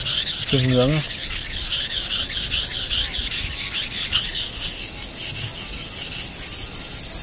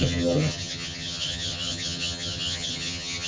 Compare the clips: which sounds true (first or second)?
first